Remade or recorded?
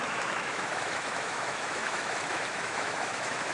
remade